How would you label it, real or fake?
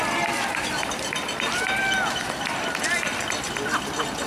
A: fake